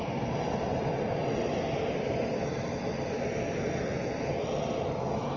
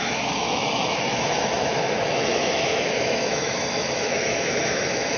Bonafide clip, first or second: first